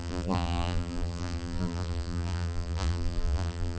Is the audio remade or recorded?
remade